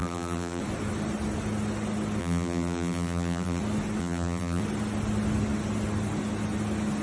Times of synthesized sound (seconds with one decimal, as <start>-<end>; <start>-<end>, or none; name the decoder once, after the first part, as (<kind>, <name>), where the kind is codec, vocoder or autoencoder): 0.0-0.6 (vocoder, BigVGAN v2); 2.2-3.6; 4.0-4.6